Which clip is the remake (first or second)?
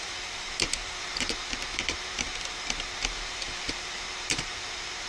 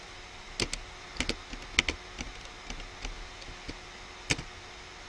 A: first